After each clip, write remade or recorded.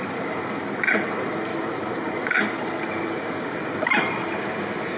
recorded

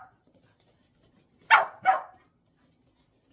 recorded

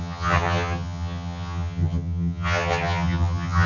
remade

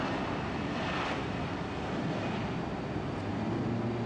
recorded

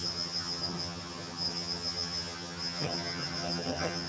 remade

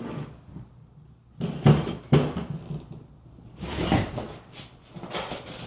recorded